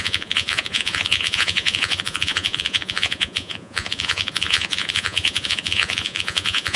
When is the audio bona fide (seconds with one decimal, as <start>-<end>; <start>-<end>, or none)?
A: none